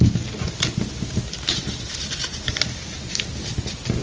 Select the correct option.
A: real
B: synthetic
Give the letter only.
A